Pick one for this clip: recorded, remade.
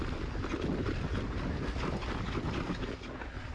recorded